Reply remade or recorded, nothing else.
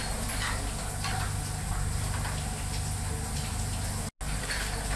recorded